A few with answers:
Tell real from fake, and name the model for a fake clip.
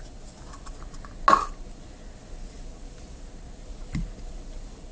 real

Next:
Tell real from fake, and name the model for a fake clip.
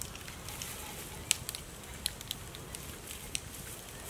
real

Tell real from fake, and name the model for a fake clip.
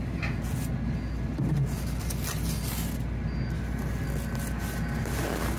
real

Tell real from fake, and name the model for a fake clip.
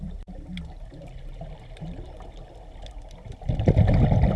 real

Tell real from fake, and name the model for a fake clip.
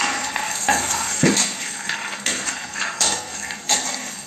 fake, codec, SNAC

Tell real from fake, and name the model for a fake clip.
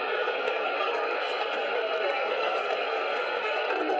fake, codec, SNAC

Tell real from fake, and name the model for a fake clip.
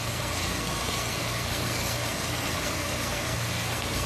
fake, codec, SNAC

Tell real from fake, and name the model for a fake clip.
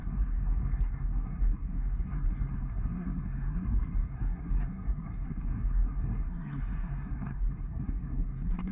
fake, codec, SNAC